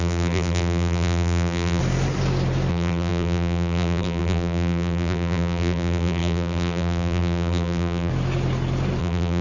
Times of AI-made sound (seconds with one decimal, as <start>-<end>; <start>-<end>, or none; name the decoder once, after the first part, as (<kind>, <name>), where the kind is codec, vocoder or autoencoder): 0.0-1.8 (vocoder, BigVGAN v2); 2.7-8.1; 9.0-9.4